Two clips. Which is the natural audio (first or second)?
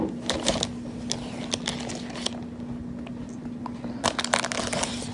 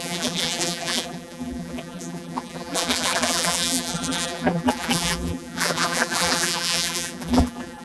first